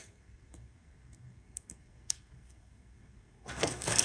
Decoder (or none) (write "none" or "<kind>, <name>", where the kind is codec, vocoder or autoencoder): codec, SNAC